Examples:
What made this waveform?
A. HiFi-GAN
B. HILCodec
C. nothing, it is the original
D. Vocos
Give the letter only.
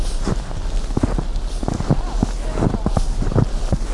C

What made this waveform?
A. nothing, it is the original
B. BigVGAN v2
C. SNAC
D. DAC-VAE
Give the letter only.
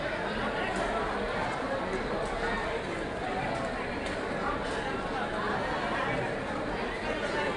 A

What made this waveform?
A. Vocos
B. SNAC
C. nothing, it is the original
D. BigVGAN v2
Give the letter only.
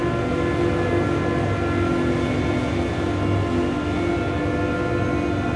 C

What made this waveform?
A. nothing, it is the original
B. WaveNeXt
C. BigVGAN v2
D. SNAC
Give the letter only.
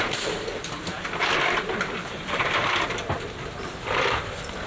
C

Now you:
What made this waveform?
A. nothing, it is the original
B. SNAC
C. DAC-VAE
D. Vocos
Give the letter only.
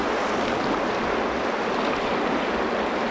A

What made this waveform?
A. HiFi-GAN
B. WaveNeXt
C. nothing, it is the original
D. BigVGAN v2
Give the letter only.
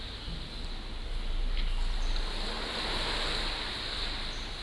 C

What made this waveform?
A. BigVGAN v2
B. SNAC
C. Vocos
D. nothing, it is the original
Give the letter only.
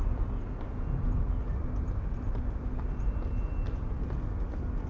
D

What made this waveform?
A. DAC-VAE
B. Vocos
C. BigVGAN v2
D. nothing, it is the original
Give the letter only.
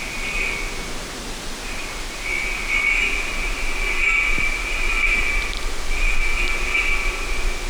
D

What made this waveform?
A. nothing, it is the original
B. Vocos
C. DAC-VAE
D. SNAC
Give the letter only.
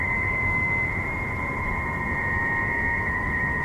C